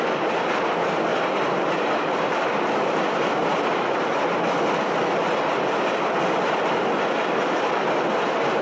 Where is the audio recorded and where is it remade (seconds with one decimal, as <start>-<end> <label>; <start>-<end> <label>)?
0.0-8.6 recorded